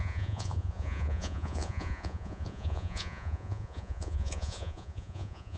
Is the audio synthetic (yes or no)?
yes